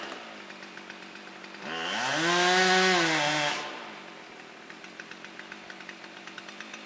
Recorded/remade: recorded